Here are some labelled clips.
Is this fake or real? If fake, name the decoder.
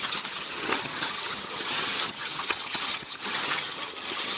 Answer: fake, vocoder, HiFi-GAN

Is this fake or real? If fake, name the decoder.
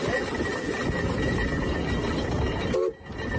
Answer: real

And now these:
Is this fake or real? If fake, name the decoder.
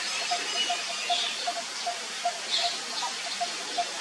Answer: real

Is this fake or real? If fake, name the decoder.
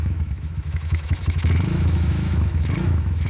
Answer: fake, autoencoder, DAC-VAE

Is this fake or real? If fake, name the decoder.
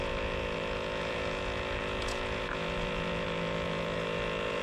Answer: fake, vocoder, Vocos